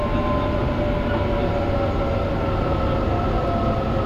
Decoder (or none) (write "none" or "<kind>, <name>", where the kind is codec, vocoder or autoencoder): none